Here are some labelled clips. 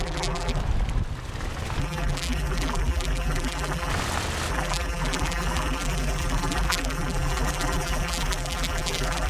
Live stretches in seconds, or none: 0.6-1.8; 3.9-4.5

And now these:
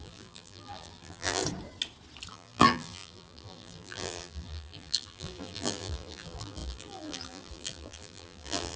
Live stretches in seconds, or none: 1.4-2.3

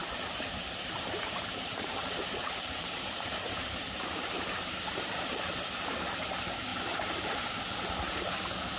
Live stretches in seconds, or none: 0.0-0.6; 5.4-6.7; 7.5-8.8

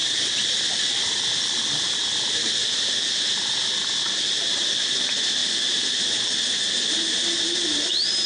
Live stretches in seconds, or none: 0.0-8.3

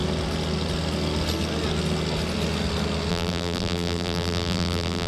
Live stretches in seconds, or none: 0.0-3.1

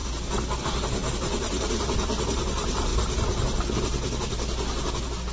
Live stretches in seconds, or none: 0.0-0.6; 2.9-5.3

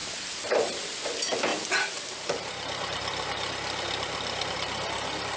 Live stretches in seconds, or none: 0.9-1.5; 4.7-5.4